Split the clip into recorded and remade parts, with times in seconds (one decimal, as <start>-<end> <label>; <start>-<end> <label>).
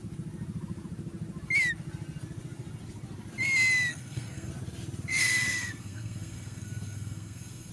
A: 0.0-3.9 recorded; 3.9-4.5 remade; 4.5-5.1 recorded; 5.1-7.7 remade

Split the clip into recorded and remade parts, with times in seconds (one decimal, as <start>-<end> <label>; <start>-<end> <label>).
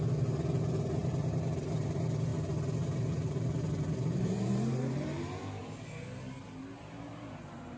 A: 0.0-2.3 remade; 2.3-3.1 recorded; 3.1-5.6 remade; 5.6-6.4 recorded; 6.4-7.8 remade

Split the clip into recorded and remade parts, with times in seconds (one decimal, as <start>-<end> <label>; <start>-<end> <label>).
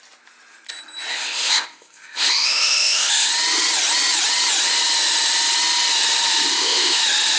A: 0.0-1.1 recorded; 1.1-3.3 remade; 3.3-6.5 recorded; 6.5-7.0 remade; 7.0-7.4 recorded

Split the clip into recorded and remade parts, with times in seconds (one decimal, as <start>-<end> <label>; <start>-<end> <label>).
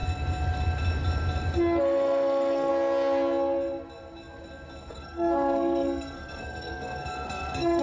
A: 0.0-1.8 recorded; 1.8-2.7 remade; 2.7-4.9 recorded; 4.9-7.8 remade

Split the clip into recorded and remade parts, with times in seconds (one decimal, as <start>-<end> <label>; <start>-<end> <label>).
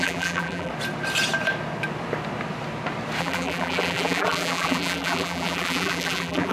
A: 0.0-0.7 remade; 0.7-3.2 recorded; 3.2-6.5 remade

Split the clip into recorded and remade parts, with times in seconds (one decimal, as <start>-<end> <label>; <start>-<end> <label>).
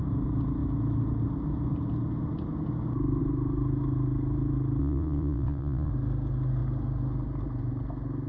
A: 0.0-4.8 recorded; 4.8-5.9 remade; 5.9-8.3 recorded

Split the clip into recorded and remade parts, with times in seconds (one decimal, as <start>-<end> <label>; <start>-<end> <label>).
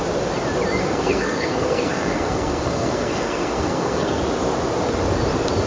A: 0.0-0.8 recorded; 0.8-4.2 remade; 4.2-5.7 recorded